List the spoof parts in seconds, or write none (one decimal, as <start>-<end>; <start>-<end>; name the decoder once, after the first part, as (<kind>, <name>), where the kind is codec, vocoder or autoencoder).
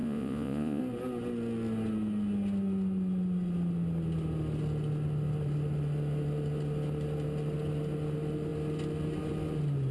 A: 0.0-0.8 (vocoder, Vocos)